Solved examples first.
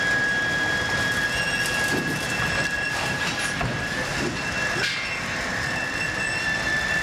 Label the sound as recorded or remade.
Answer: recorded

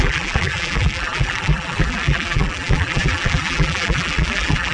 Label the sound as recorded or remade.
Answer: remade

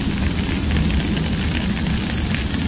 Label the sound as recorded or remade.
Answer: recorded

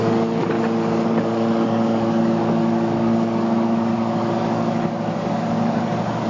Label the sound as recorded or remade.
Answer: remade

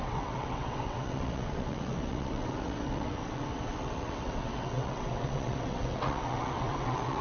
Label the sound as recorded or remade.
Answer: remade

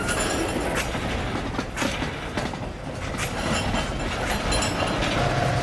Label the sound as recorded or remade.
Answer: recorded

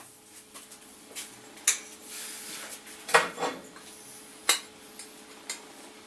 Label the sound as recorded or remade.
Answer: recorded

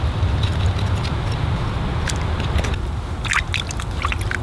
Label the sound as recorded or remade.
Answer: recorded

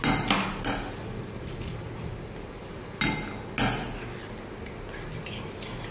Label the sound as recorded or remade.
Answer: recorded